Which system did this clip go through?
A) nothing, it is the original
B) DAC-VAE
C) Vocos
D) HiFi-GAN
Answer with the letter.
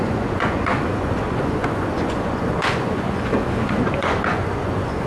C